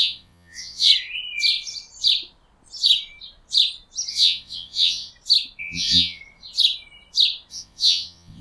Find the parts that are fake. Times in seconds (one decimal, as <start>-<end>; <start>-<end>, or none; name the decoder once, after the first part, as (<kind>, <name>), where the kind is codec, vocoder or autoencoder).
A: 0.0-0.9 (vocoder, WaveNeXt); 4.1-5.1; 5.6-6.2; 7.5-8.4